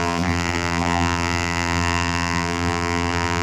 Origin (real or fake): fake